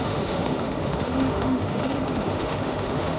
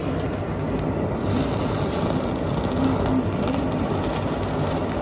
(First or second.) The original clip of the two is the second